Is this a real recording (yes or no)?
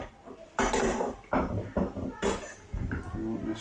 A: no